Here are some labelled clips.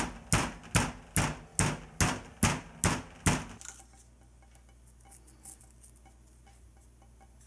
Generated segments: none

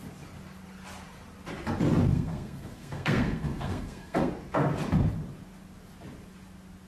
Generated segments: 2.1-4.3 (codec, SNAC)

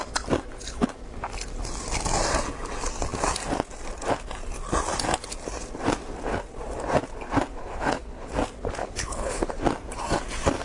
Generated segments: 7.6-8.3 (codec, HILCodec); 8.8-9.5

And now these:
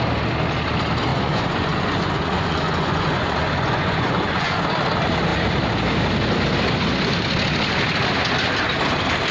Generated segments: 1.1-4.6 (vocoder, Vocos)